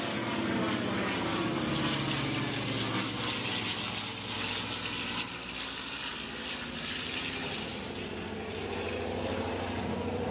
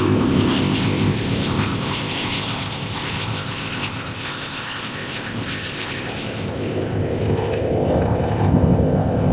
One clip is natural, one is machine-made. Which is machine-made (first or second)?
second